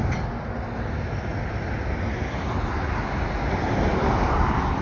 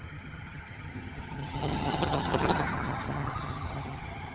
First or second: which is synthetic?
second